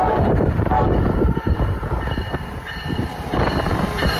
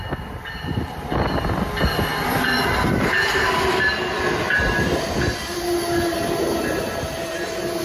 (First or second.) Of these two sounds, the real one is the second